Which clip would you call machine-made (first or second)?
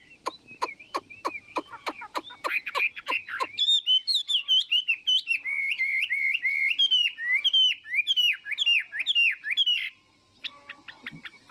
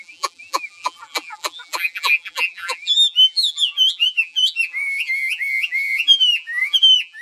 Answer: second